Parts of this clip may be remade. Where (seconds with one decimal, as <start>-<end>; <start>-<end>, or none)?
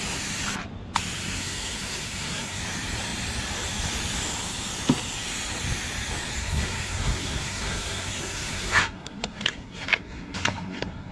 1.2-2.6; 6.4-11.1